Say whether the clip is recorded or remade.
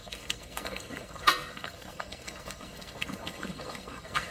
remade